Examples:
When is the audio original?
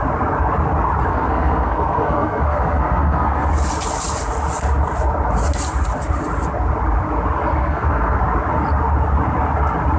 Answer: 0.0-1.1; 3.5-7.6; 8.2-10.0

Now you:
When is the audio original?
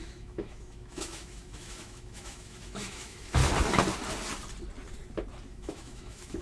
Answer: 3.4-5.5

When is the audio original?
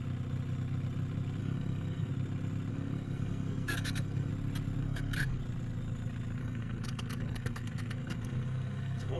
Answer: 0.0-1.4; 2.1-2.7; 4.3-4.8; 5.4-6.4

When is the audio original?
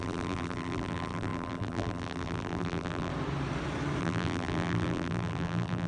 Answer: 3.1-4.0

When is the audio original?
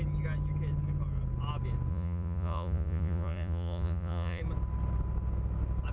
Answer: 0.0-1.9; 4.4-5.9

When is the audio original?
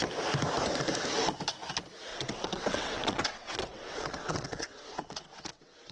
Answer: 0.0-2.1